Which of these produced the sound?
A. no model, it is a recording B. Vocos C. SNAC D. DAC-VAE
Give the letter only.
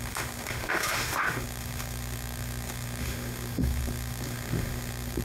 D